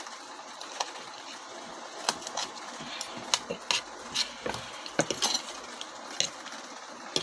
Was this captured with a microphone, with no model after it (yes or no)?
yes